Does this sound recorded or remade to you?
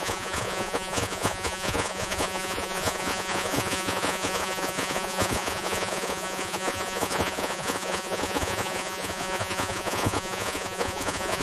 remade